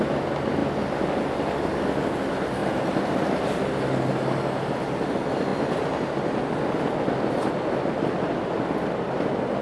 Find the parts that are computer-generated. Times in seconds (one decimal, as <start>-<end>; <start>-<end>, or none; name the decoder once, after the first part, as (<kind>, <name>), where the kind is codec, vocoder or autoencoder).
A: none